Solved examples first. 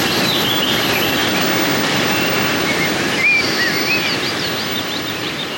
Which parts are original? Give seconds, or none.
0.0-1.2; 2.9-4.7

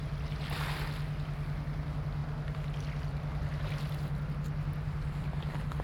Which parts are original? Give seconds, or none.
0.0-5.8

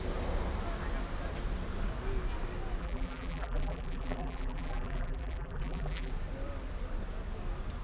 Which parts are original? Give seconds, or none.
0.0-2.8; 6.1-7.8

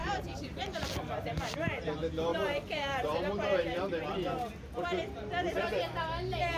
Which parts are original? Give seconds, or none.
1.8-2.3; 3.9-6.6